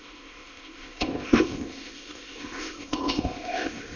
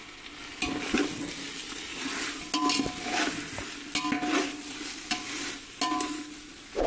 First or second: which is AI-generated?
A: first